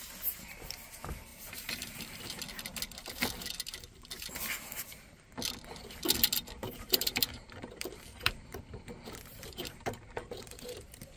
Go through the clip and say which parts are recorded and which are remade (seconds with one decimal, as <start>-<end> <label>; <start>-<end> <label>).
0.0-1.3 recorded; 1.3-2.2 remade; 2.2-6.6 recorded; 6.6-8.6 remade; 8.6-9.3 recorded; 9.3-10.1 remade; 10.1-11.2 recorded